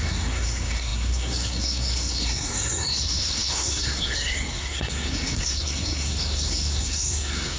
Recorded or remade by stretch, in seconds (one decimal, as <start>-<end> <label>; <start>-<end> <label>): 0.0-7.6 remade